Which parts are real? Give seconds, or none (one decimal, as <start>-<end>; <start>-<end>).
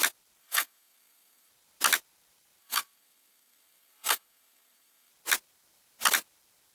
0.0-0.4; 1.5-2.6; 5.1-6.7